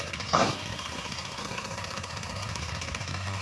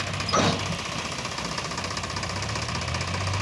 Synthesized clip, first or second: first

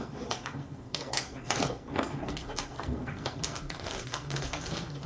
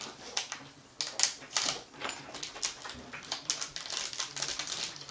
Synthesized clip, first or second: first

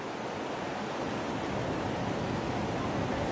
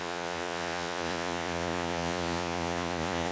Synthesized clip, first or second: second